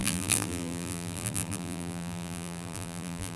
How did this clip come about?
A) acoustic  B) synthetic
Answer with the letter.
B